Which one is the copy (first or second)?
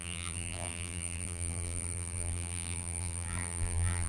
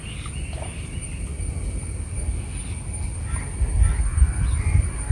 first